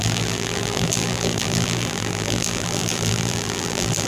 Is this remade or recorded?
remade